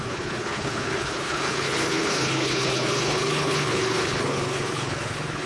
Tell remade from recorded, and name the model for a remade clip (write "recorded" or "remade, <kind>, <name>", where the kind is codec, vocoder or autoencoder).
remade, codec, HILCodec